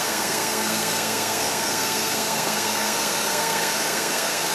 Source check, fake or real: fake